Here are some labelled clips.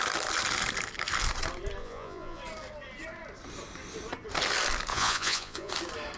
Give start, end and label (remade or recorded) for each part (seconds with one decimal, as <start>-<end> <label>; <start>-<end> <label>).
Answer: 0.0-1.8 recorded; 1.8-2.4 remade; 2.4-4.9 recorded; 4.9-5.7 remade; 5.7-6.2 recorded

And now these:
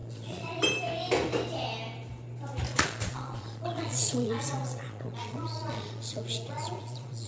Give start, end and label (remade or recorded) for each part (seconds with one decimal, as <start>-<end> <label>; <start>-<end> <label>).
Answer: 0.0-0.6 remade; 0.6-2.7 recorded; 2.7-7.3 remade

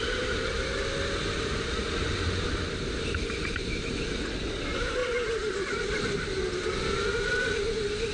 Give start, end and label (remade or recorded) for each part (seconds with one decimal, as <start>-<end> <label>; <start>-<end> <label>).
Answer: 0.0-8.1 recorded

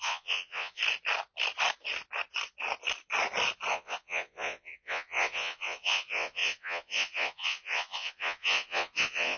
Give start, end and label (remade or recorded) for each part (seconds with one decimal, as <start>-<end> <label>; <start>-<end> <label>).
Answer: 0.0-0.8 remade; 0.8-3.7 recorded; 3.7-9.4 remade

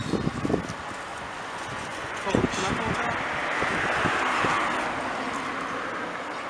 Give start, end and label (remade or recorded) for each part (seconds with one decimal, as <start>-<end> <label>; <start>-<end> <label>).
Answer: 0.0-1.1 recorded; 1.1-2.4 remade; 2.4-6.5 recorded

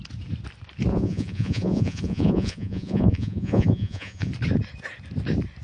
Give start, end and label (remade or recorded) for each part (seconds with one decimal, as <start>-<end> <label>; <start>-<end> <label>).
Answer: 0.0-0.9 recorded; 0.9-4.3 remade; 4.3-5.6 recorded

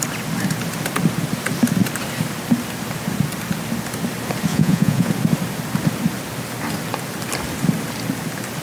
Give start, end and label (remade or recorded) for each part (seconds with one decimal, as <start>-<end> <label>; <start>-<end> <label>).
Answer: 0.0-4.5 recorded; 4.5-5.1 remade; 5.1-8.6 recorded

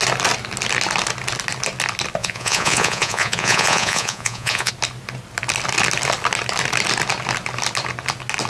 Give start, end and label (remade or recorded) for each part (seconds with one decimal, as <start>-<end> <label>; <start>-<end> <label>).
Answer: 0.0-2.2 recorded; 2.2-4.7 remade; 4.7-8.5 recorded